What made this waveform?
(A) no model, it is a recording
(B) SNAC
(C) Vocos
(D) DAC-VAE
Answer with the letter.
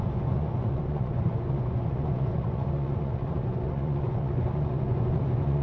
C